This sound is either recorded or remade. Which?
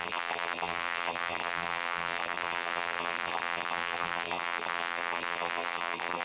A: remade